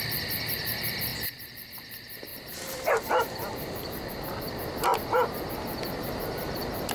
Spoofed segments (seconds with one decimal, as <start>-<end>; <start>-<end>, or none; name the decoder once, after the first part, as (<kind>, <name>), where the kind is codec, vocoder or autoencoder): 1.1-1.7 (vocoder, BigVGAN v2); 2.3-4.1; 4.9-5.5